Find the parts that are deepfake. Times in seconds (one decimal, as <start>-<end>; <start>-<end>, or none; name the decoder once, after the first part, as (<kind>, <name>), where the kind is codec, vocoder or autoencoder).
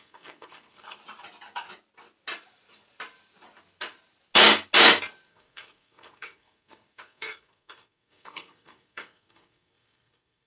0.0-1.0 (codec, SNAC); 5.3-10.5